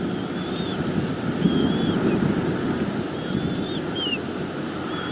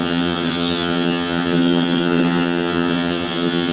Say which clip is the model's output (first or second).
second